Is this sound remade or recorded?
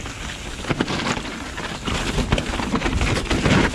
recorded